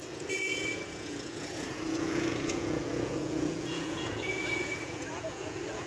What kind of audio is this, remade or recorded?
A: remade